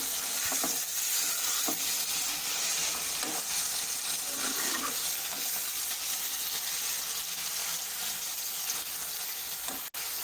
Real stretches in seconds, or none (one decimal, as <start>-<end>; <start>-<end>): 0.0-10.2